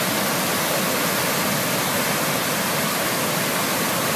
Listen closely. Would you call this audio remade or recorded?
recorded